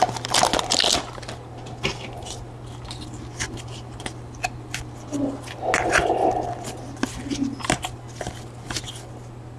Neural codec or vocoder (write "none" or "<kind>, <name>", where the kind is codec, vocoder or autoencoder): none